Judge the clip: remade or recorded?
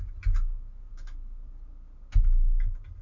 recorded